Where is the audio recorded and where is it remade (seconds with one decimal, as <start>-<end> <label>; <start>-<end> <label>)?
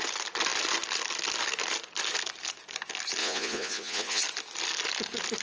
0.0-3.2 recorded; 3.2-4.2 remade; 4.2-5.4 recorded